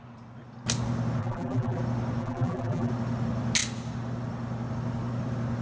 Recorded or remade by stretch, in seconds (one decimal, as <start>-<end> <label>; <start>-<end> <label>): 0.0-1.2 recorded; 1.2-1.8 remade; 1.8-2.2 recorded; 2.2-2.9 remade; 2.9-5.6 recorded